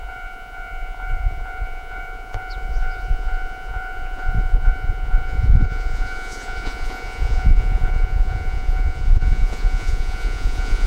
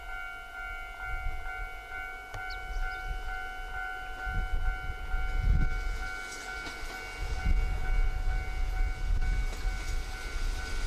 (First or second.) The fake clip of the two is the first